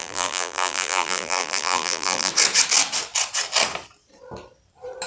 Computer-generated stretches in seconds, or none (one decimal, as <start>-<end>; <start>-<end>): 0.0-2.3